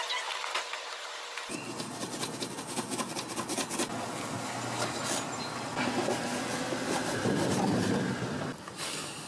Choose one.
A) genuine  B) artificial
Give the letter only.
A